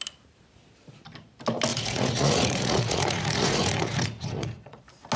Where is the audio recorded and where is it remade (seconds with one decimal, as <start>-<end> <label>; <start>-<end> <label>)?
0.0-1.7 recorded; 1.7-4.8 remade; 4.8-5.2 recorded